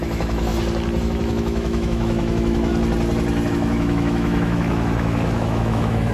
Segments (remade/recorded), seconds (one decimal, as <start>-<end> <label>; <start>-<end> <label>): 0.0-0.5 remade; 0.5-1.0 recorded; 1.0-2.7 remade; 2.7-3.5 recorded; 3.5-6.1 remade